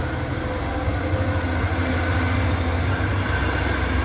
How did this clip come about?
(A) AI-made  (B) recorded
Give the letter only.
B